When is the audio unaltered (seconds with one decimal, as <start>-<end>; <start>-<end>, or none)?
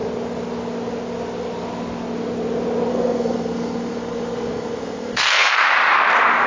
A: 0.0-2.9; 5.6-6.5